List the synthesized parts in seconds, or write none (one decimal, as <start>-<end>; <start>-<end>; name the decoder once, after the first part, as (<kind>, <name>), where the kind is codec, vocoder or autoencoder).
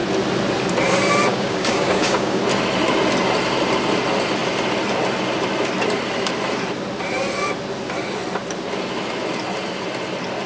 1.3-2.4 (codec, DAC)